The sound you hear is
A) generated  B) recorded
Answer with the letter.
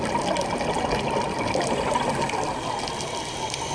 B